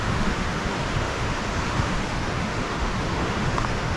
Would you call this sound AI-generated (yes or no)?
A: yes